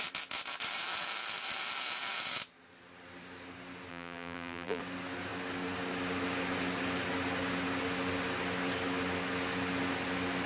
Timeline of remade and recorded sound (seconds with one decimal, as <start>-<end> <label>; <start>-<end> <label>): 0.0-3.9 recorded; 3.9-4.8 remade; 4.8-10.5 recorded

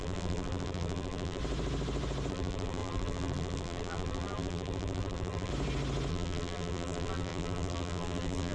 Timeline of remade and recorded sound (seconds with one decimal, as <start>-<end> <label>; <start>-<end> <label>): 0.0-1.4 remade; 1.4-2.3 recorded; 2.3-5.5 remade; 5.5-6.1 recorded; 6.1-8.5 remade

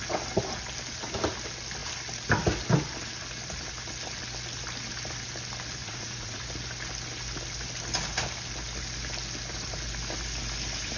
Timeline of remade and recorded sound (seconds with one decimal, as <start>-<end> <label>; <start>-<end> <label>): 0.0-5.8 recorded; 5.8-6.4 remade; 6.4-11.0 recorded

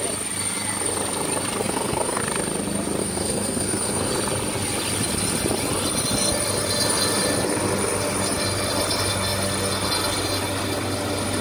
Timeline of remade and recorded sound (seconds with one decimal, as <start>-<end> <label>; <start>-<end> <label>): 0.0-1.6 recorded; 1.6-2.2 remade; 2.2-3.0 recorded; 3.0-4.1 remade; 4.1-11.4 recorded

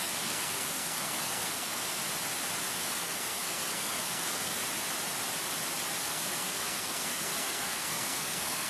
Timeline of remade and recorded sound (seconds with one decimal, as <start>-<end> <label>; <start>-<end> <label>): 0.0-2.0 remade; 2.0-2.7 recorded; 2.7-4.6 remade; 4.6-6.0 recorded; 6.0-8.7 remade